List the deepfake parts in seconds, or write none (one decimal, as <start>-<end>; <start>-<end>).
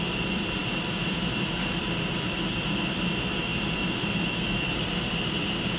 0.0-5.8